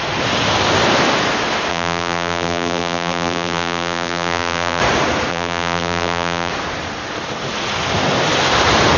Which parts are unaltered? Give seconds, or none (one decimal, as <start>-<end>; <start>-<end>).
0.0-1.7; 4.8-5.3; 6.5-9.0